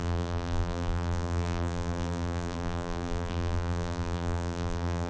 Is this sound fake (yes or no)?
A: yes